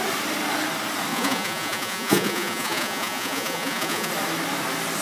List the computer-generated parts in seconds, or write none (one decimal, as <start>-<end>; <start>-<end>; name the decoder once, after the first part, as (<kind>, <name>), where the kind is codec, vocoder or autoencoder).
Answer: 1.1-4.1 (vocoder, Vocos)